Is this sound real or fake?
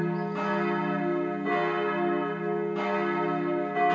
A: real